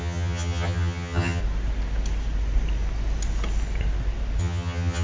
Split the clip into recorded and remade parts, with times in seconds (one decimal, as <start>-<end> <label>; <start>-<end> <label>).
0.0-1.4 remade; 1.4-4.4 recorded; 4.4-5.0 remade

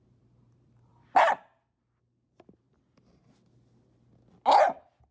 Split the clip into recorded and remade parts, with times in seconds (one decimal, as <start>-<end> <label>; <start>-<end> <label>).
0.0-5.1 recorded

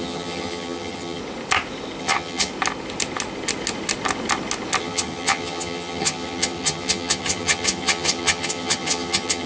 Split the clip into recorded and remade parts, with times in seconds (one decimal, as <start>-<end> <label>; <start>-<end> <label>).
0.0-1.2 remade; 1.2-2.0 recorded; 2.0-2.5 remade; 2.5-4.8 recorded; 4.8-9.5 remade

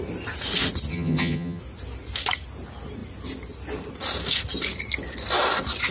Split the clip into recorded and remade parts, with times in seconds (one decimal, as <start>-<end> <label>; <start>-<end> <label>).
0.0-0.9 recorded; 0.9-1.6 remade; 1.6-5.9 recorded

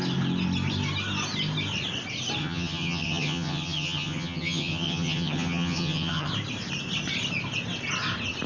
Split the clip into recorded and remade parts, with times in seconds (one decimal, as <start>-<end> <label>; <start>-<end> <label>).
0.0-2.4 recorded; 2.4-6.3 remade; 6.3-8.5 recorded